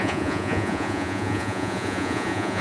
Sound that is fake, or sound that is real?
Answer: fake